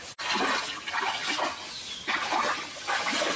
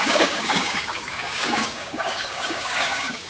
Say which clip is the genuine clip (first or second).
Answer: first